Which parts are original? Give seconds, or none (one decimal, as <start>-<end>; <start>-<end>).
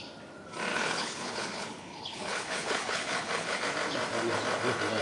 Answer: 0.0-0.7; 3.6-5.0